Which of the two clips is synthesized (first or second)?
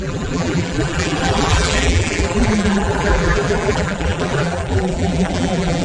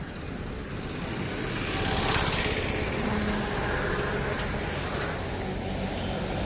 first